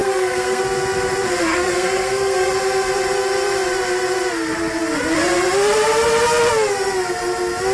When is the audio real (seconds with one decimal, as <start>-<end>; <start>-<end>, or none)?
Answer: 0.6-1.5; 2.5-7.7

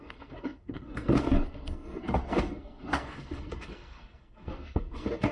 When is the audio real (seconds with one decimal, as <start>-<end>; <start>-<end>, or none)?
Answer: none

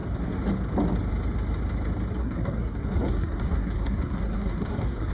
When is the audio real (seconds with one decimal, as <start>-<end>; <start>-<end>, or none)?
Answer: 0.0-2.2

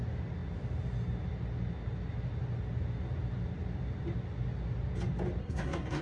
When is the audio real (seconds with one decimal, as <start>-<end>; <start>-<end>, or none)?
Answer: 0.0-5.4